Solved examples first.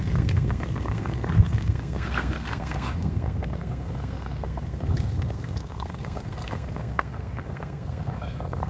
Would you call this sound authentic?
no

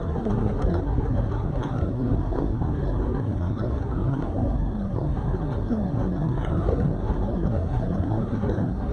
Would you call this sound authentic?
no